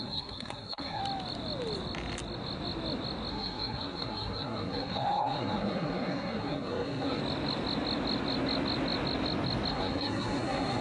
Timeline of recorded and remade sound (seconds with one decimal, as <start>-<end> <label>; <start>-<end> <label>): 0.0-1.0 remade; 1.0-3.3 recorded; 3.3-7.2 remade; 7.2-9.7 recorded; 9.7-10.8 remade